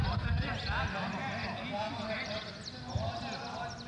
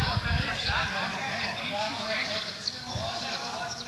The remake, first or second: second